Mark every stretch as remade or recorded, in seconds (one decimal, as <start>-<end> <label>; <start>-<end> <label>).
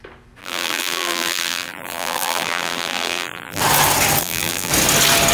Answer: 0.0-0.4 recorded; 0.4-3.6 remade; 3.6-4.2 recorded; 4.2-4.7 remade; 4.7-5.3 recorded